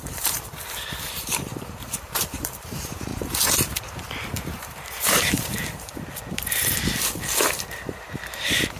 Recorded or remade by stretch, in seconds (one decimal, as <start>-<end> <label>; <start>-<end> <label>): 0.0-5.9 remade; 5.9-7.4 recorded; 7.4-8.8 remade